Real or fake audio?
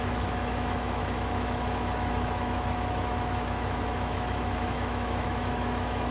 fake